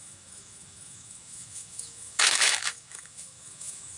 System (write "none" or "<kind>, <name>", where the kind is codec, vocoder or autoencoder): autoencoder, DAC-VAE